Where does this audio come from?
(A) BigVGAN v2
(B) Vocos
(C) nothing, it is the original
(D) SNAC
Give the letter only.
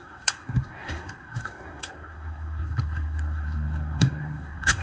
D